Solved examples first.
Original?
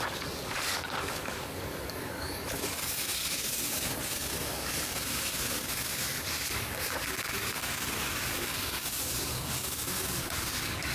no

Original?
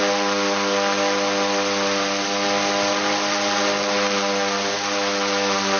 yes